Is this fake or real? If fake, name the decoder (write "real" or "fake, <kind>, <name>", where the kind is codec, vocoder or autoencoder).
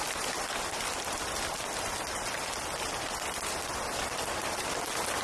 real